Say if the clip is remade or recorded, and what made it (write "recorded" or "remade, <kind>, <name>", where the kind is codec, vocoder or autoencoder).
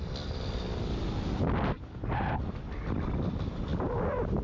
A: recorded